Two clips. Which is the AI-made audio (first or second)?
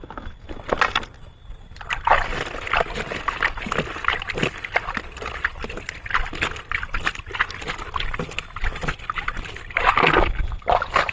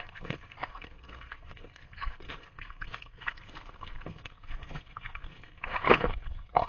second